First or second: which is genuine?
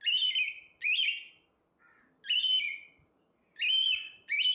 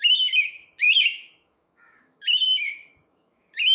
first